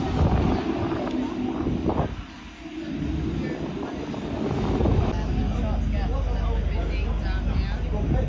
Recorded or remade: recorded